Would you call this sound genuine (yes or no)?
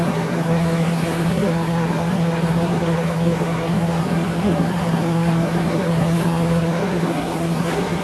no